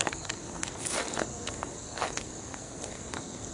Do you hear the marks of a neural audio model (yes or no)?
yes